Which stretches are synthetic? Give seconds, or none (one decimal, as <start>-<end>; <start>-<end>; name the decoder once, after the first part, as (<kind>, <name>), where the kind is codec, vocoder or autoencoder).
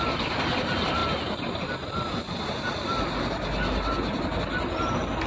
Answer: none